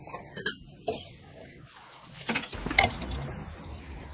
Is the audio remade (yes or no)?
no